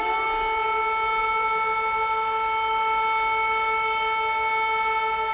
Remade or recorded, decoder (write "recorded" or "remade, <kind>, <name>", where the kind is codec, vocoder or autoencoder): recorded